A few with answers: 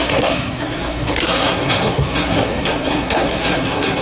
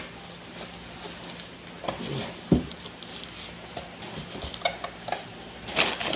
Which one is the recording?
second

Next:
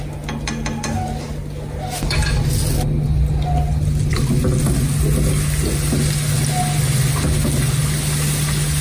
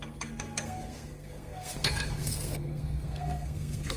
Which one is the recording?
first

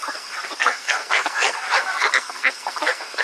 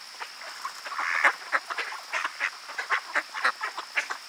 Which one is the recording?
second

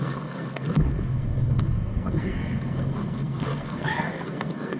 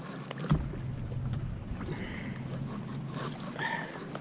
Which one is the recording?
second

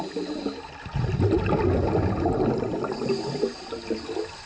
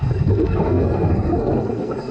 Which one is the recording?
first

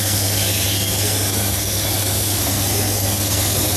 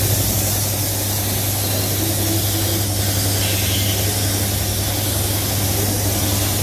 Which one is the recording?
second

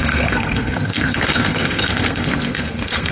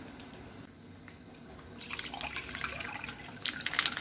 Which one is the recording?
second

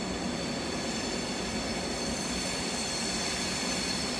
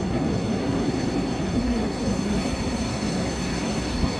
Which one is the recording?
first